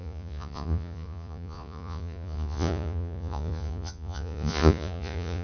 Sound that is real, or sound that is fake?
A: fake